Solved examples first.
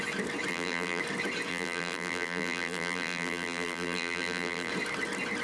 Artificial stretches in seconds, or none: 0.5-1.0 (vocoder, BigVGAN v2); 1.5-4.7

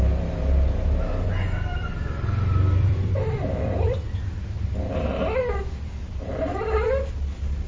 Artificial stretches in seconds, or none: 1.7-4.0 (vocoder, BigVGAN v2)

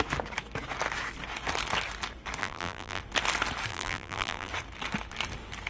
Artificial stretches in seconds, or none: 2.4-3.0 (vocoder, BigVGAN v2); 3.7-4.5

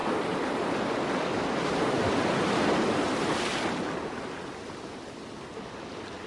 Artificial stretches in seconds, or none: none

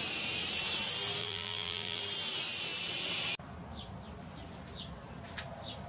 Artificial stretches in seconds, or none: 1.2-2.0 (vocoder, BigVGAN v2)